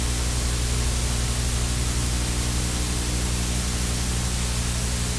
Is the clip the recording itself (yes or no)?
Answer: yes